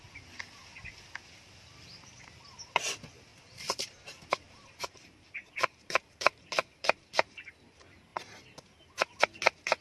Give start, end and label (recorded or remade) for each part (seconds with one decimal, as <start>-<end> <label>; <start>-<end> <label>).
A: 0.0-3.3 recorded; 3.3-7.5 remade; 7.5-9.8 recorded